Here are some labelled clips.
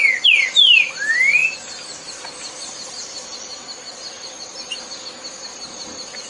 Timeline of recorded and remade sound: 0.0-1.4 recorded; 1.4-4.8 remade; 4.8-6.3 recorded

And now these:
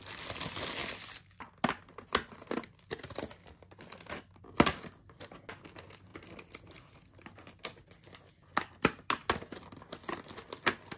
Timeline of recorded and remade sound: 0.0-11.0 recorded